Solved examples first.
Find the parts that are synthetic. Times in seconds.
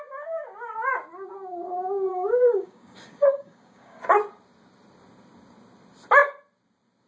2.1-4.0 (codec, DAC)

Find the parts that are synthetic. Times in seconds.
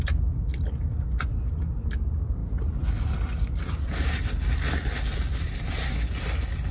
none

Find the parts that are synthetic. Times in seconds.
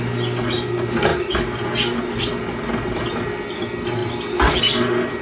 none